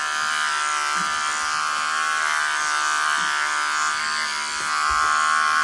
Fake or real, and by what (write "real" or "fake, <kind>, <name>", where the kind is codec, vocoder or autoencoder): real